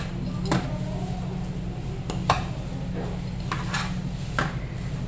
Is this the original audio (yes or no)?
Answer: yes